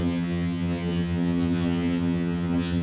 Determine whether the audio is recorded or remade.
remade